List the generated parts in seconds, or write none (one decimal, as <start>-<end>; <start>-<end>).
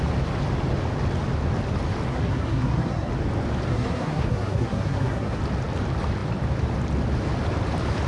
2.1-3.1; 3.7-5.4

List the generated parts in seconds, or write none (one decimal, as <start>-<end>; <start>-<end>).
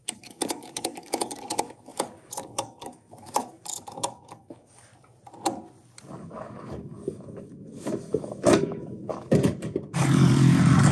0.0-4.9; 6.2-10.9